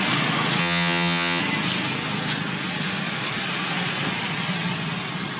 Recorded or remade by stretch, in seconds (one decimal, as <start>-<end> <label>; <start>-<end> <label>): 0.0-0.6 recorded; 0.6-1.4 remade; 1.4-5.4 recorded